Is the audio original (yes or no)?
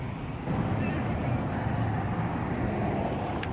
yes